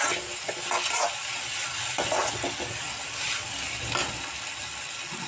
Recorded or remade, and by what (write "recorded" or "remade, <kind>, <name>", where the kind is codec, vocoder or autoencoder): recorded